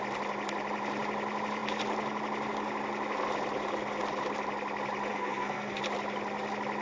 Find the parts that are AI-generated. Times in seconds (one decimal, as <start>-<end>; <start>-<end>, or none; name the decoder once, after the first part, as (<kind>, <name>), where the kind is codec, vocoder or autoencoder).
5.1-5.8 (codec, SNAC)